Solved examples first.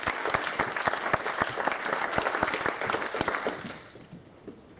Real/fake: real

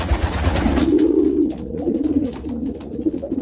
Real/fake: fake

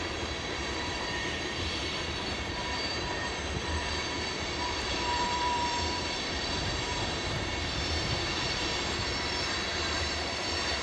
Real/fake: fake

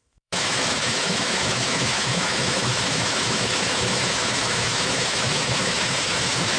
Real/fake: fake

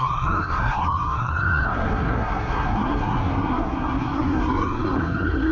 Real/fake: fake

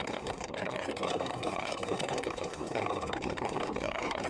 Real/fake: fake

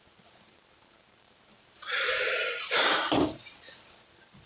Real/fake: fake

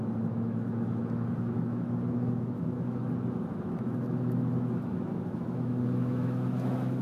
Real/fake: fake